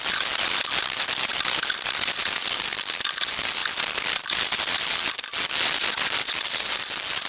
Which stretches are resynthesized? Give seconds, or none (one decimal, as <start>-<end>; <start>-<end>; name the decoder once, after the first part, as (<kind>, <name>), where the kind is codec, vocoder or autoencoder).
none